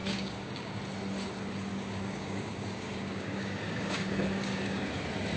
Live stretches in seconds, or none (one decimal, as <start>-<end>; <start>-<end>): 0.8-1.7; 4.9-5.4